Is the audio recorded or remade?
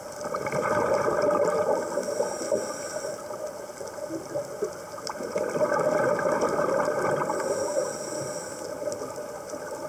recorded